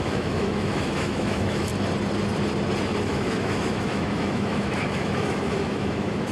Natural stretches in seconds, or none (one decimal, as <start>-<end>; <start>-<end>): 1.7-3.0